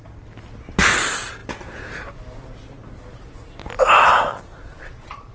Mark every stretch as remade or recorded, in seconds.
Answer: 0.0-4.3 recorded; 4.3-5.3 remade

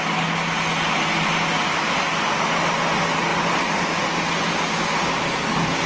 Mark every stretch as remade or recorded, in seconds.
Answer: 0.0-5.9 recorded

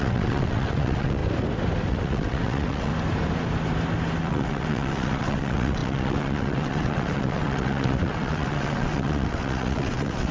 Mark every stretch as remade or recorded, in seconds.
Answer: 0.0-1.2 remade; 1.2-1.9 recorded; 1.9-2.9 remade; 2.9-4.2 recorded; 4.2-10.3 remade

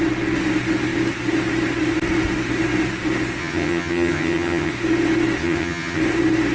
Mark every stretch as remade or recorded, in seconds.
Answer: 0.0-3.4 recorded; 3.4-4.7 remade; 4.7-5.4 recorded; 5.4-6.0 remade; 6.0-6.5 recorded

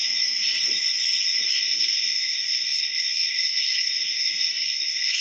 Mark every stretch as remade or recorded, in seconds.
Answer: 0.0-1.5 recorded; 1.5-5.2 remade

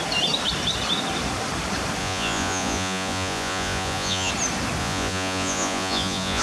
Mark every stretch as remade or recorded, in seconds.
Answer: 0.0-2.0 recorded; 2.0-4.3 remade; 4.3-4.8 recorded; 4.8-6.4 remade

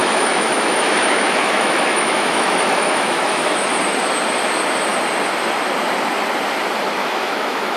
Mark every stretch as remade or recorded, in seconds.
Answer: 0.0-3.7 remade; 3.7-7.0 recorded; 7.0-7.8 remade